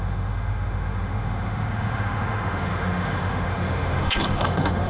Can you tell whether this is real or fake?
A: fake